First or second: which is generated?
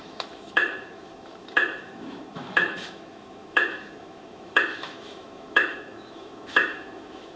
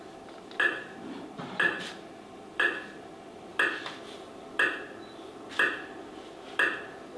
first